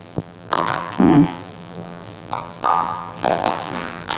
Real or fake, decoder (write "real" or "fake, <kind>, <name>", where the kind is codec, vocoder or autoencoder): fake, vocoder, BigVGAN v2